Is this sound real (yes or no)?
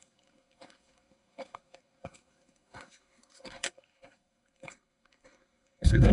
no